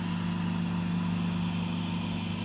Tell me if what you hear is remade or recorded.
recorded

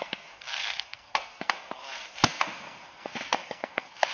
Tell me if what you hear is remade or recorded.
remade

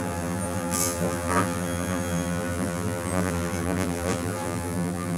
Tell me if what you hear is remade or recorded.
remade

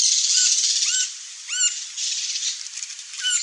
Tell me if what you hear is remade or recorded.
recorded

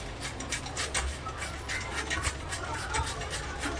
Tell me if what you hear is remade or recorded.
recorded